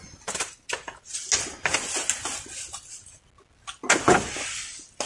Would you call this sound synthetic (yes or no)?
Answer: no